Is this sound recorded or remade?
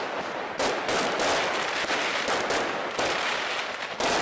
recorded